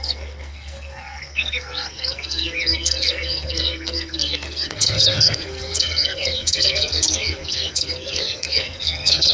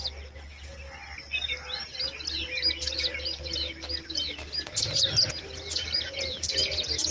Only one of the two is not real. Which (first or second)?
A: first